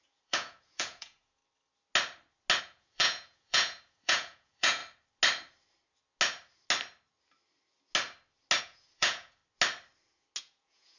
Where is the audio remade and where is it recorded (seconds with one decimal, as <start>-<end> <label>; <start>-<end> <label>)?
0.0-1.4 remade; 1.4-2.6 recorded; 2.6-4.8 remade; 4.8-8.6 recorded; 8.6-9.4 remade; 9.4-10.4 recorded; 10.4-11.0 remade